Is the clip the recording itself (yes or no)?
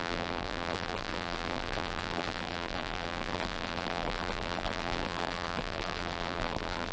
no